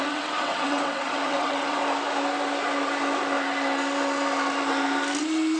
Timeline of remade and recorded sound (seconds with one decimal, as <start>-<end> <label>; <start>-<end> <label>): 0.0-1.8 remade; 1.8-5.6 recorded